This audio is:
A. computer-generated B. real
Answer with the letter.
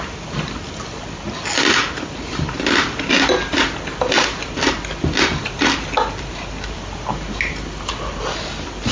B